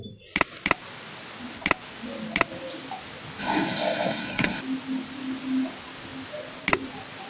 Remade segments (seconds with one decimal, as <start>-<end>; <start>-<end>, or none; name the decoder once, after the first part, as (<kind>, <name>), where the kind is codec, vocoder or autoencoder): 3.4-4.6 (codec, SNAC)